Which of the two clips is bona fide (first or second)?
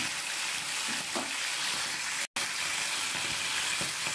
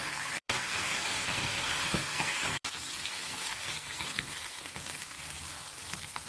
first